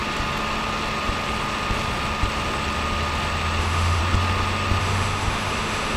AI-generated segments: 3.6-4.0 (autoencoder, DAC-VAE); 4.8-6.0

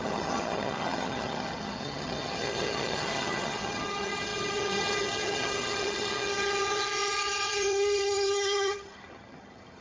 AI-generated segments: 0.0-9.8 (vocoder, HiFi-GAN)

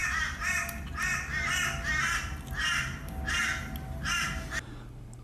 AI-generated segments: none

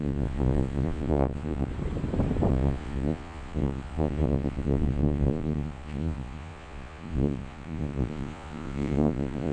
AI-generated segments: 0.0-1.7 (vocoder, Vocos); 2.5-9.5